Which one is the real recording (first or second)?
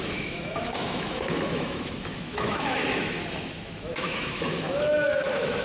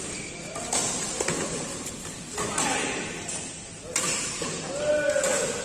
second